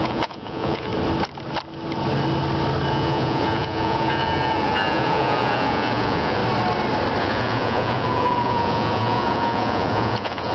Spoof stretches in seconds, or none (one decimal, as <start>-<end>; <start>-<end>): 0.0-0.9; 2.9-6.4; 7.2-10.5